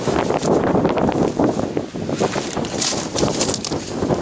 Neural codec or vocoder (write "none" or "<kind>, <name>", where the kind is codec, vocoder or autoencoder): none